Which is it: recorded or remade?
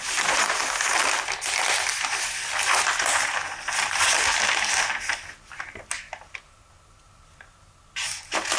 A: recorded